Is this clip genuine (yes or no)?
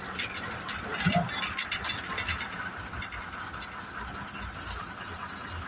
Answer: yes